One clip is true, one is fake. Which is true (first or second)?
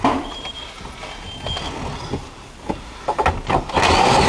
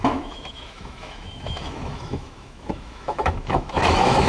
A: first